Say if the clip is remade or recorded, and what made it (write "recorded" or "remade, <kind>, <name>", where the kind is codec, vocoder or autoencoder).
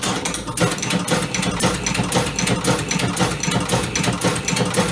recorded